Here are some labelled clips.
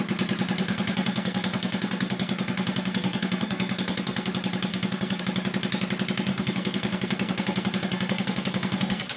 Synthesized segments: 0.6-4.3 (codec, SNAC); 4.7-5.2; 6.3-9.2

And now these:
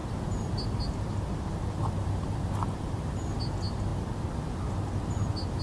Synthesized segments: none

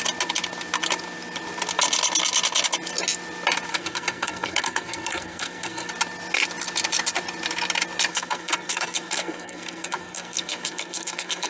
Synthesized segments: 3.7-5.9 (codec, SNAC); 8.1-11.5

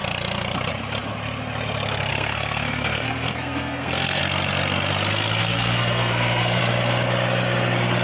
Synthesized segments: 2.1-4.2 (codec, SNAC); 5.4-6.6

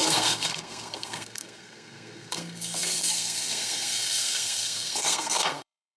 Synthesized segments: 0.0-6.0 (codec, SNAC)

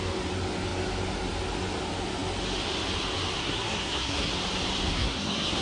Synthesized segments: 3.4-4.3 (codec, SNAC); 4.9-5.6

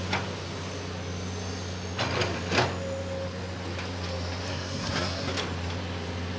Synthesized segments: 4.5-5.3 (codec, SNAC)

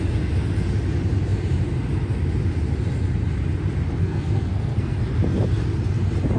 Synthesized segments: 4.0-5.0 (codec, SNAC)